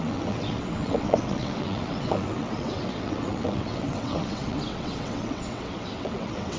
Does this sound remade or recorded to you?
remade